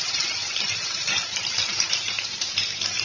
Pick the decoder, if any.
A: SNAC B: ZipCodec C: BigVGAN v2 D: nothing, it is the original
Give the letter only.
C